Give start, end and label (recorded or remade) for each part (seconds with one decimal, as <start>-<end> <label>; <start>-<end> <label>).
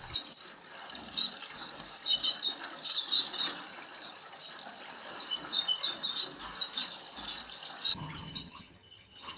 0.0-7.9 recorded; 7.9-9.4 remade